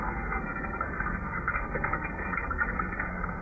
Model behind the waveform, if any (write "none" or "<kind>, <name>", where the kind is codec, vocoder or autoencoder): codec, SNAC